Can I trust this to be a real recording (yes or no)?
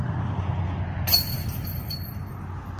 yes